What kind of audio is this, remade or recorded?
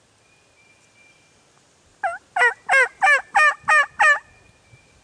recorded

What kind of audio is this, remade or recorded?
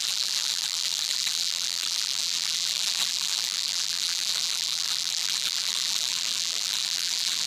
remade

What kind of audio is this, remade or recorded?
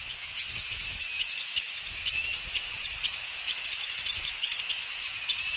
remade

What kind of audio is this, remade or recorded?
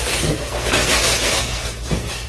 remade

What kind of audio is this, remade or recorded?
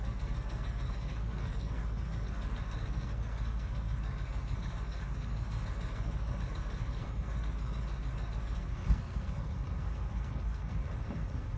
remade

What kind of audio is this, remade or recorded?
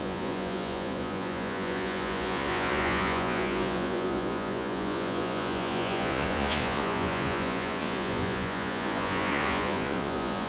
remade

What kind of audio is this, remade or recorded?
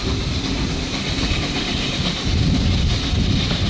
recorded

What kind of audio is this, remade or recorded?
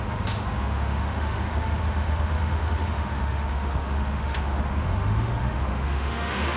remade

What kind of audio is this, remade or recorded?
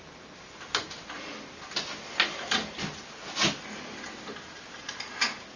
recorded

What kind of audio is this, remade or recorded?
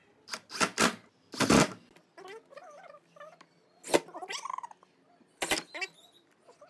recorded